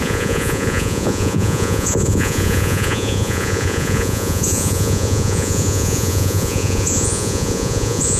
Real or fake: fake